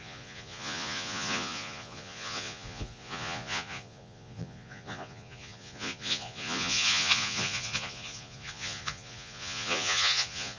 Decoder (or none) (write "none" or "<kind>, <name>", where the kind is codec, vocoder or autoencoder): vocoder, Vocos